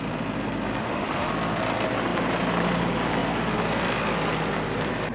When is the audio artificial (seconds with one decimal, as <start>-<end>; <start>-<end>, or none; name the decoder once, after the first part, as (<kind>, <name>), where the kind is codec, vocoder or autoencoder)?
0.8-1.3 (autoencoder, DAC-VAE)